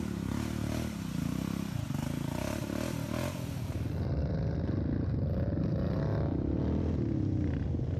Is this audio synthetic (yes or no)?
no